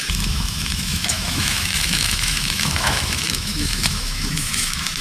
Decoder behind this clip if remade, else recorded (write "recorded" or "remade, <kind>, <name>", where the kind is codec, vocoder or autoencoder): remade, autoencoder, DAC-VAE